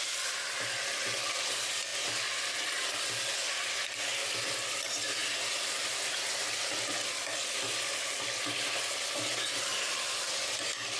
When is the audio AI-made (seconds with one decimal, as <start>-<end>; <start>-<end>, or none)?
none